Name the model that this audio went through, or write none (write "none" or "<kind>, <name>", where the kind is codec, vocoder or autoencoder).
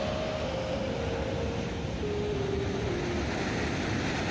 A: none